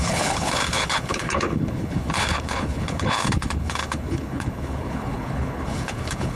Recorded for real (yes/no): no